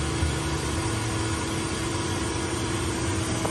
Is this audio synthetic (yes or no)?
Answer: no